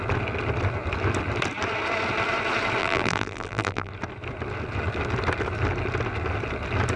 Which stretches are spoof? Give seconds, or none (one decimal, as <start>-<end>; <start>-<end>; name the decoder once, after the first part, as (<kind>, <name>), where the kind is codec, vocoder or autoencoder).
2.8-3.9 (vocoder, BigVGAN v2)